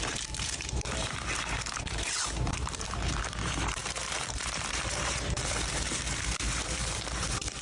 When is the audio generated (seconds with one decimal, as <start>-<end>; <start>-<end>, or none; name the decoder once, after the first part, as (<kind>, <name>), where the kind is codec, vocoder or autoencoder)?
0.0-7.6 (vocoder, BigVGAN v2)